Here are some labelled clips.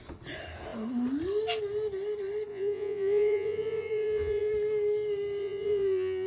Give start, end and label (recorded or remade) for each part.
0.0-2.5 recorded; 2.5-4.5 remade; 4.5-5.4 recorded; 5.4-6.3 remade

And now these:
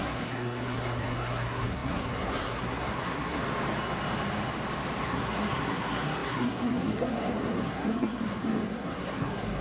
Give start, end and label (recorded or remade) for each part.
0.0-3.4 remade; 3.4-5.0 recorded; 5.0-9.6 remade